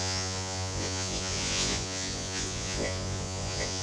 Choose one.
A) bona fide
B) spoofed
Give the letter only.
B